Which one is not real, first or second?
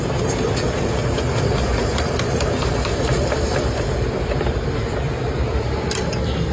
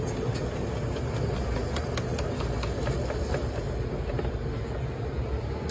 first